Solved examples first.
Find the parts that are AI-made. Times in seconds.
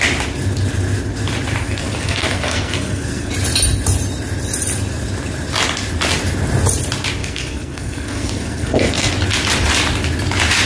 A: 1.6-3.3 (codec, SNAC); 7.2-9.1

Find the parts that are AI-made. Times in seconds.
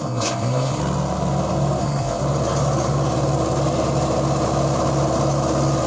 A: 0.0-0.8 (codec, SNAC); 1.8-2.2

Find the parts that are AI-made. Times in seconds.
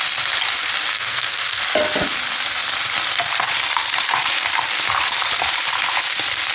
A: 0.9-1.6 (codec, SNAC)